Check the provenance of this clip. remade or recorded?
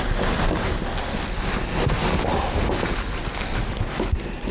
recorded